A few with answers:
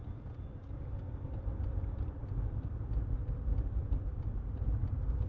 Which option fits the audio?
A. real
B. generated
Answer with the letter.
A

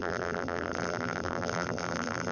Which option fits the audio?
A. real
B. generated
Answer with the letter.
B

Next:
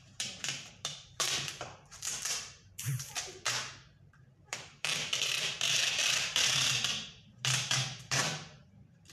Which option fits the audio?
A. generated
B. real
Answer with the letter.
A